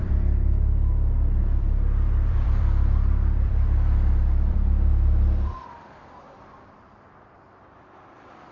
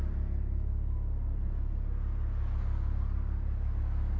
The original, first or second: second